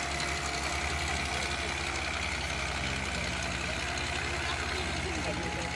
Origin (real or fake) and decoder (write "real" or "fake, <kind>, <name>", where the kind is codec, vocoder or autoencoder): real